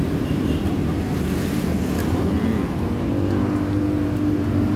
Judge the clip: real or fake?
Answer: real